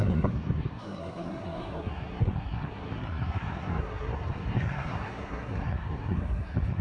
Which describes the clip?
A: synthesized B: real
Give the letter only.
A